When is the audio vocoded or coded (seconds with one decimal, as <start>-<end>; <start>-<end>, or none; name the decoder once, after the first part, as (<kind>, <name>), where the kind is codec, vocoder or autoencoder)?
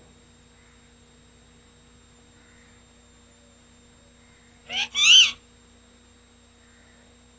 none